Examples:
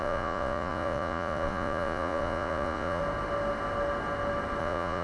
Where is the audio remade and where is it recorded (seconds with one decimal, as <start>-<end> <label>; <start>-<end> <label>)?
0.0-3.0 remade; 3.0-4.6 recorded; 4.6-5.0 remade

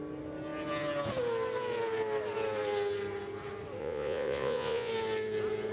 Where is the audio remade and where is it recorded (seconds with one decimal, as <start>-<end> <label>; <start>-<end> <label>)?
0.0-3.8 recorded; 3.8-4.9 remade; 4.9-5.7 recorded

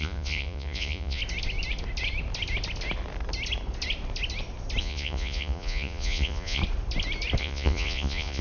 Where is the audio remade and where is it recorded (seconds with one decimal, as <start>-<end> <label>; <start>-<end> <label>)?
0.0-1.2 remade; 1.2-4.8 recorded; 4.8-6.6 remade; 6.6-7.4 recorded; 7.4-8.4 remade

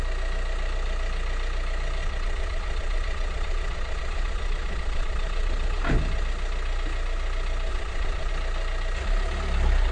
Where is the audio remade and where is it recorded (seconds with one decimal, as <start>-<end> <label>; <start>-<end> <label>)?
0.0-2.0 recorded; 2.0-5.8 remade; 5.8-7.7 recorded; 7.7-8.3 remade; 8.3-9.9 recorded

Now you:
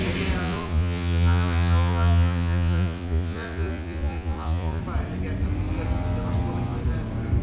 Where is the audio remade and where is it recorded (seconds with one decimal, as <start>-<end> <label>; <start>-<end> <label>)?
0.0-0.4 recorded; 0.4-4.8 remade; 4.8-7.4 recorded